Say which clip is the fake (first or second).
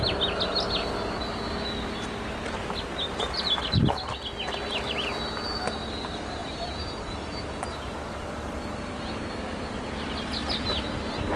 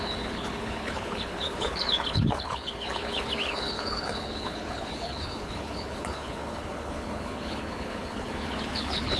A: second